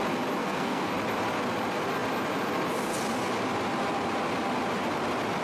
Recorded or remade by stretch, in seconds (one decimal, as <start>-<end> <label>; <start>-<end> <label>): 0.0-0.4 recorded; 0.4-0.9 remade; 0.9-5.4 recorded